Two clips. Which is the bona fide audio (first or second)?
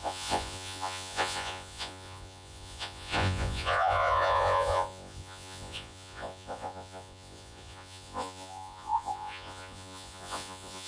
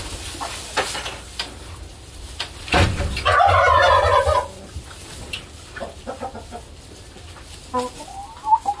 second